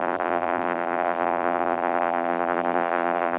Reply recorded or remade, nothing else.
remade